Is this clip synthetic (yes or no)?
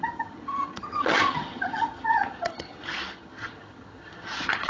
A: yes